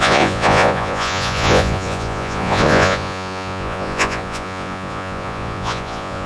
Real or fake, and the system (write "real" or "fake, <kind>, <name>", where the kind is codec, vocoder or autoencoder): fake, vocoder, Vocos